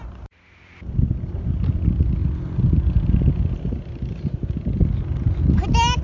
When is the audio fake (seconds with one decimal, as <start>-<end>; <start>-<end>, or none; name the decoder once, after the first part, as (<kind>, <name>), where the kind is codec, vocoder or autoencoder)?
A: none